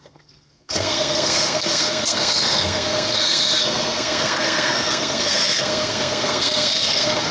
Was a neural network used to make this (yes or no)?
yes